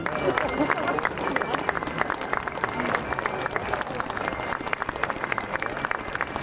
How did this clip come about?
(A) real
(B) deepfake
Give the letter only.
A